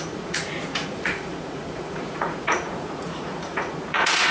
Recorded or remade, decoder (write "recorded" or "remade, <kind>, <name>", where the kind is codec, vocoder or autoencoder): remade, vocoder, Vocos